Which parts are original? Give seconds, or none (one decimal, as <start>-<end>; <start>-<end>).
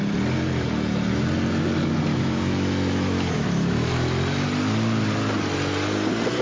0.0-2.1; 3.9-6.4